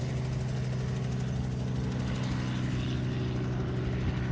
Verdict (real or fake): real